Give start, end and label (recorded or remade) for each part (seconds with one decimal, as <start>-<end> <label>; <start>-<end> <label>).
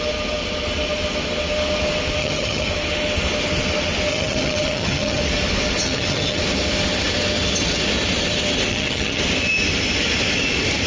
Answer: 0.0-2.2 recorded; 2.2-2.7 remade; 2.7-4.1 recorded; 4.1-5.2 remade; 5.2-5.8 recorded; 5.8-6.4 remade; 6.4-8.7 recorded; 8.7-9.2 remade; 9.2-10.9 recorded